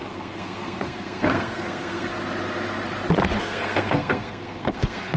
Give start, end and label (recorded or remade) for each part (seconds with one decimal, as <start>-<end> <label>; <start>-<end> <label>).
0.0-2.1 remade; 2.1-3.4 recorded; 3.4-5.2 remade